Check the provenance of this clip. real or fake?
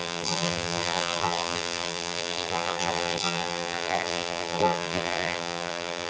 fake